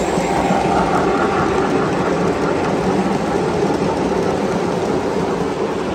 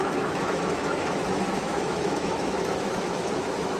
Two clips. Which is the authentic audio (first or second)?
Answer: first